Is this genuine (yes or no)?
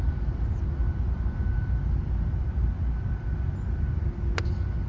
yes